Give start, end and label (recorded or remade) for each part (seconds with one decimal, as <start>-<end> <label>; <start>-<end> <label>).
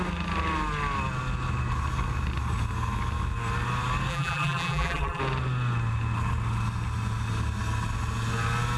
0.0-4.1 recorded; 4.1-5.2 remade; 5.2-8.8 recorded